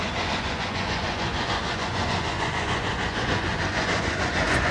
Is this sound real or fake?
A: fake